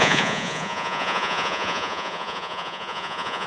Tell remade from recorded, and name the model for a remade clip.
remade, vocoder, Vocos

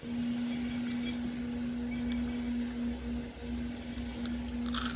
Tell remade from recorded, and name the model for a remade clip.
recorded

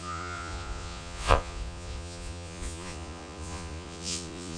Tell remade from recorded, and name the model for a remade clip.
remade, vocoder, Vocos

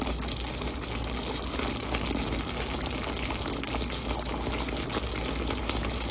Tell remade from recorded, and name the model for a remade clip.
recorded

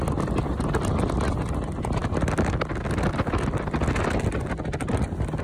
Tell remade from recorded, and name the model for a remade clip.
recorded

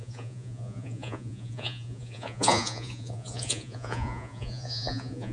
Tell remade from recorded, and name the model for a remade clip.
remade, vocoder, Vocos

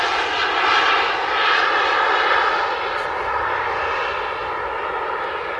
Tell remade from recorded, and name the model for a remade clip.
recorded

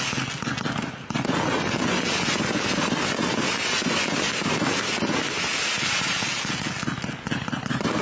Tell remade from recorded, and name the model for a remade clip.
recorded